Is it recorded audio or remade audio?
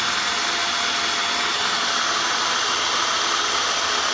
recorded